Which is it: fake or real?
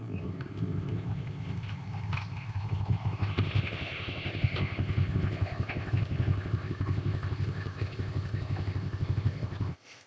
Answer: fake